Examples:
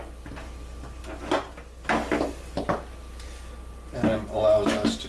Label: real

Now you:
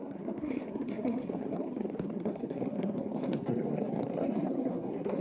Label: fake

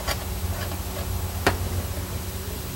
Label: real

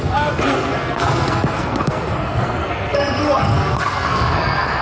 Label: fake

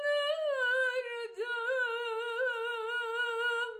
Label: real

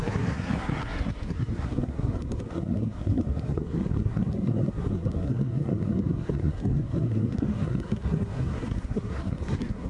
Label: fake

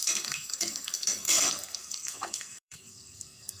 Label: fake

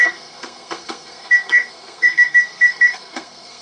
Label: fake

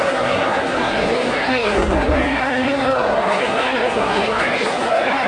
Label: fake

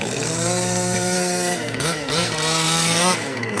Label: fake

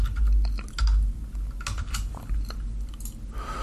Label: real